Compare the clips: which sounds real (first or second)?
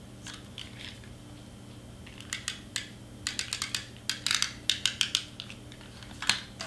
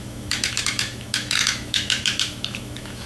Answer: first